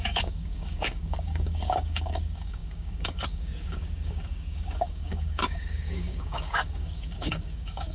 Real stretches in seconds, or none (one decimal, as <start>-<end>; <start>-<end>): none